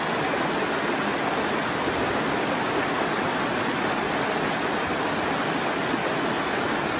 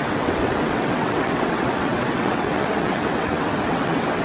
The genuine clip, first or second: first